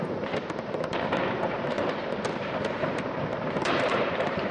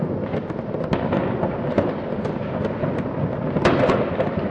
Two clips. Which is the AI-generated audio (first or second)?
first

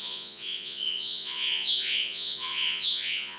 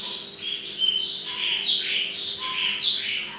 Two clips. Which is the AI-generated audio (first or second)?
first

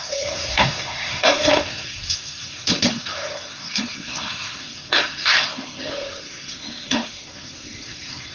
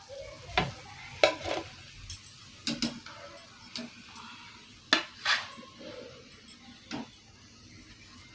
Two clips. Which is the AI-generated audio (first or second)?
first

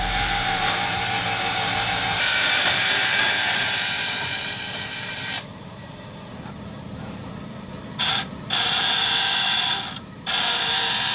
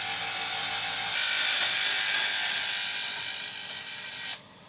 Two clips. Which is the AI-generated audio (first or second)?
first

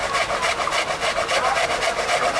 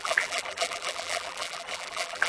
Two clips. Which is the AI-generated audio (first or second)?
second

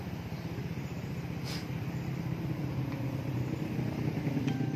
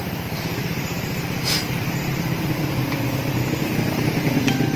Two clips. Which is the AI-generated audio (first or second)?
second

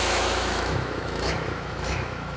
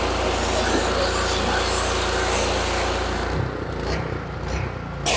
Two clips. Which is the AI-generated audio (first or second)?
first